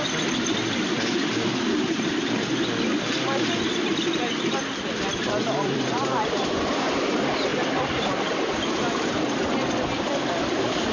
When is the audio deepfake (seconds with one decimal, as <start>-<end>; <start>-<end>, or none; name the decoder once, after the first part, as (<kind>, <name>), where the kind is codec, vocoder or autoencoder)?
0.0-7.5 (vocoder, BigVGAN v2); 10.4-10.9